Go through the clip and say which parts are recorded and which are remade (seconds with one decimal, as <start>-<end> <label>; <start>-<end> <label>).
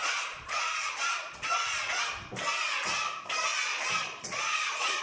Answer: 0.0-2.0 remade; 2.0-3.5 recorded; 3.5-5.0 remade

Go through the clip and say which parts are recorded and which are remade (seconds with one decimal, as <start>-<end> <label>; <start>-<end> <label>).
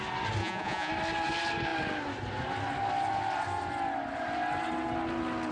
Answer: 0.0-0.4 recorded; 0.4-0.9 remade; 0.9-5.5 recorded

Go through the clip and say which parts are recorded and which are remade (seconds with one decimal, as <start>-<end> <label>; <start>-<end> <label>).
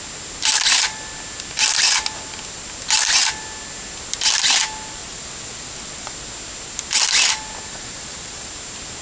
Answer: 0.0-5.0 recorded; 5.0-6.1 remade; 6.1-7.7 recorded; 7.7-8.5 remade; 8.5-9.0 recorded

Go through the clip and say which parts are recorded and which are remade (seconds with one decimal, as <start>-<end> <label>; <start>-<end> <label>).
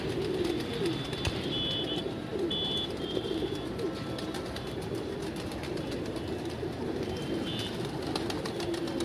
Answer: 0.0-9.0 recorded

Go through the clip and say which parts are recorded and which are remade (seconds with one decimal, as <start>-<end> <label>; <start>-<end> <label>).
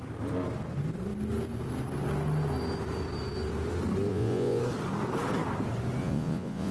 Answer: 0.0-4.1 recorded; 4.1-4.6 remade; 4.6-6.0 recorded; 6.0-6.7 remade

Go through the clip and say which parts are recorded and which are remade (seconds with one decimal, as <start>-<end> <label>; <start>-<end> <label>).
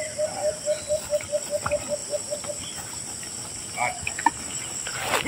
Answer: 0.0-5.3 recorded